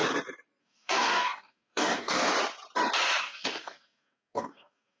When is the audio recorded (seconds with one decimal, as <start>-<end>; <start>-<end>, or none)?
0.0-0.6; 2.2-3.2